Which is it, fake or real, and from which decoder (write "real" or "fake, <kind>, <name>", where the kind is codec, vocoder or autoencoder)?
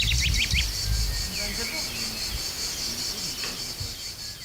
real